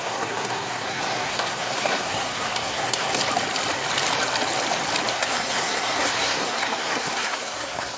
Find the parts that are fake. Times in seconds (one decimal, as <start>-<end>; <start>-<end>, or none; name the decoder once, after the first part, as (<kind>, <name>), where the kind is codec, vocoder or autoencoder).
0.0-3.2 (codec, SNAC); 5.1-8.0